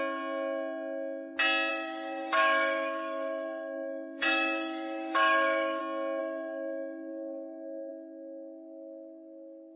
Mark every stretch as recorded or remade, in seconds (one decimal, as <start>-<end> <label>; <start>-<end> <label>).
0.0-1.7 recorded; 1.7-5.8 remade; 5.8-6.2 recorded; 6.2-7.9 remade; 7.9-9.8 recorded